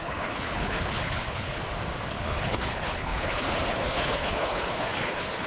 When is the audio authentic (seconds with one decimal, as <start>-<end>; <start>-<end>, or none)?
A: 1.6-2.1